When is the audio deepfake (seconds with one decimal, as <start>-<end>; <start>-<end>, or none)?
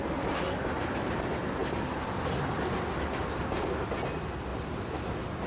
1.6-2.2; 4.5-5.1